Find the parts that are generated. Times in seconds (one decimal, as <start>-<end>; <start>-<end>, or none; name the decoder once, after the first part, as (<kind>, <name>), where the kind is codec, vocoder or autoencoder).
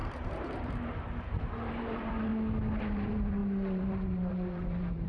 0.0-2.3 (vocoder, BigVGAN v2); 2.8-5.1